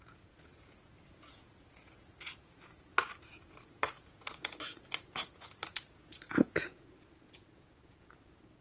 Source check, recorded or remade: remade